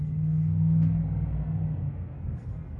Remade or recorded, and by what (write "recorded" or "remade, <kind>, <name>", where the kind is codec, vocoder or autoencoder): remade, codec, SNAC